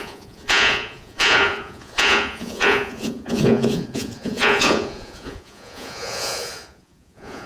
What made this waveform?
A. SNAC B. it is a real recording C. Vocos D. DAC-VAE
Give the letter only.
C